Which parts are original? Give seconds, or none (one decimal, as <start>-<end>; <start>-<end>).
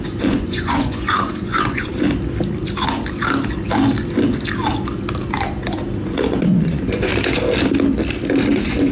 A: 1.9-6.3; 7.1-8.5